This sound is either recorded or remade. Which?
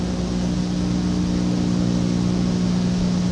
recorded